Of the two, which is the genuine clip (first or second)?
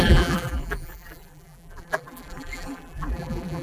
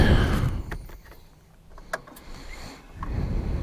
second